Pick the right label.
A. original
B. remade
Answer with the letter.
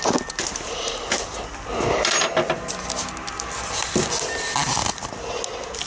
A